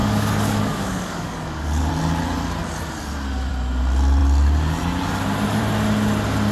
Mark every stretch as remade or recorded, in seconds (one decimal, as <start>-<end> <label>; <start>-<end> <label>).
0.0-1.9 remade; 1.9-6.5 recorded